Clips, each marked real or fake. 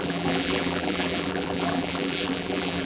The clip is fake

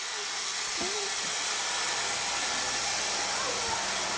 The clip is fake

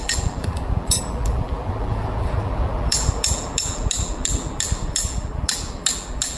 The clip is fake